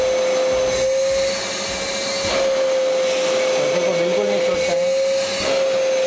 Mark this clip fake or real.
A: real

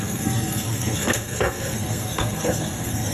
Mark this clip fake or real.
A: fake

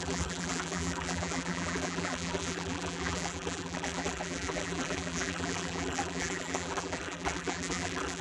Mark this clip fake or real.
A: fake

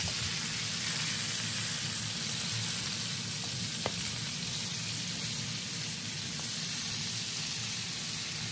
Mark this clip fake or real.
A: real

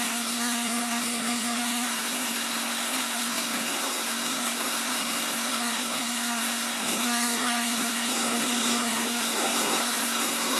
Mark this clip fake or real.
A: fake